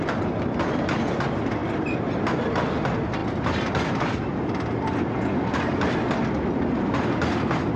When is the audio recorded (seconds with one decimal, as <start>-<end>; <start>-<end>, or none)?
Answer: 0.0-7.8